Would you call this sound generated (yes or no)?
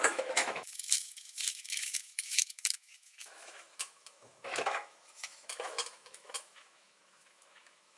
yes